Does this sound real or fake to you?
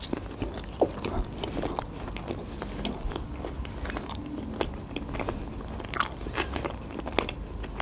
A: real